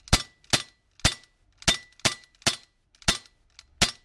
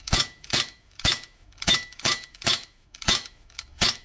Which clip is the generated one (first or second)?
second